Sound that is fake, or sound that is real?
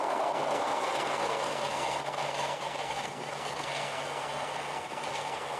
fake